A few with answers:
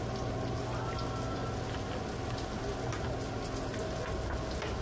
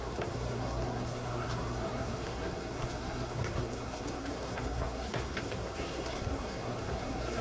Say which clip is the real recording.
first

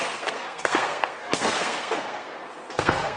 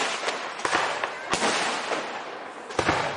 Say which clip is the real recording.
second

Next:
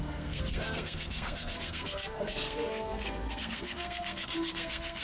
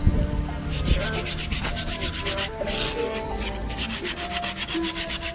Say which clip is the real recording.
second